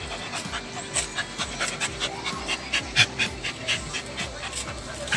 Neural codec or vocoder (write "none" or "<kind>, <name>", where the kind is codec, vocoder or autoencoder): none